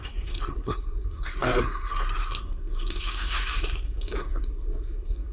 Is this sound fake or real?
fake